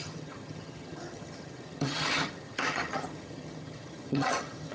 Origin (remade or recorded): remade